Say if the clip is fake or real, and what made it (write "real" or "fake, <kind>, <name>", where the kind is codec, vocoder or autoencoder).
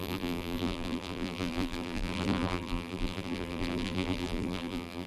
fake, vocoder, BigVGAN v2